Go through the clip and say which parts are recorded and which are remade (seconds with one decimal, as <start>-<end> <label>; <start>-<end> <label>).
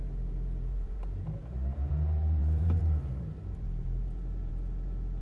0.0-1.4 remade; 1.4-1.9 recorded; 1.9-5.2 remade